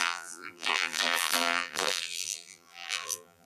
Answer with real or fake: fake